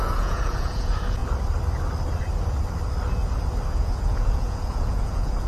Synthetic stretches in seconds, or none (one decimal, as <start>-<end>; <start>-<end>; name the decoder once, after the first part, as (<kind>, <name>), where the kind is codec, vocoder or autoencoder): 0.0-1.2 (vocoder, Vocos); 3.7-5.5

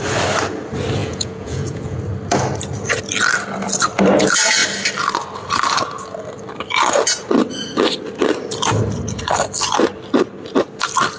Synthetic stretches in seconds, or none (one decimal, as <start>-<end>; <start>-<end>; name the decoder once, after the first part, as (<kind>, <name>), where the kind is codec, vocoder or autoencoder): 1.0-2.0 (vocoder, Vocos)

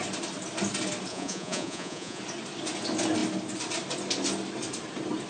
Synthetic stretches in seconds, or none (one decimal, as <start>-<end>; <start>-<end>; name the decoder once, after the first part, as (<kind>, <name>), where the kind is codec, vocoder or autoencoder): 1.1-2.2 (vocoder, Vocos)